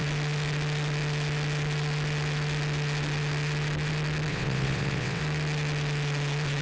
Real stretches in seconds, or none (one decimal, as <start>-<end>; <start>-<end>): 0.0-4.3; 5.2-6.6